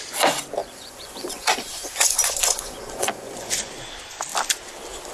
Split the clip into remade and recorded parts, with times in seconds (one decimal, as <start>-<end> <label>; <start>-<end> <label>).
0.0-0.6 recorded; 0.6-3.7 remade; 3.7-5.1 recorded